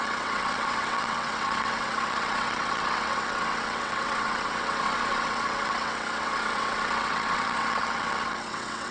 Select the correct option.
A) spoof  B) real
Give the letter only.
A